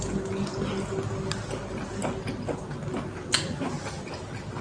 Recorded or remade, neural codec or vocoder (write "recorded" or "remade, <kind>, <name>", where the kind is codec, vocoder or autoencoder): recorded